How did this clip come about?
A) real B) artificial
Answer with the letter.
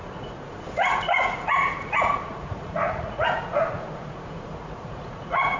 B